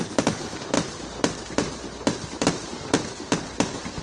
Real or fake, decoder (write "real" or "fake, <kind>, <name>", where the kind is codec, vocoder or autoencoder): fake, vocoder, BigVGAN v2